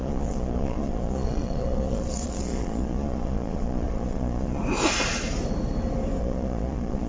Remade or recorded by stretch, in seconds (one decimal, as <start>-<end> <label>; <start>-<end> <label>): 0.0-4.6 remade; 4.6-6.2 recorded; 6.2-7.1 remade